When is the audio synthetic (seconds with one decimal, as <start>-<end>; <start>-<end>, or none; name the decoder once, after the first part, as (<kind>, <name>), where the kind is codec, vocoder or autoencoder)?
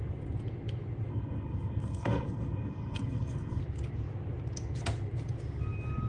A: 1.1-3.6 (codec, SNAC)